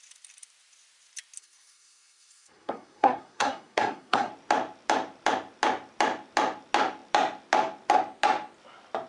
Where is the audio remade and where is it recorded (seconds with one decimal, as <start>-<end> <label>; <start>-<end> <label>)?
0.0-1.4 recorded; 1.4-4.3 remade; 4.3-9.1 recorded